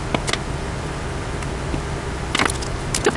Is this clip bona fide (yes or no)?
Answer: yes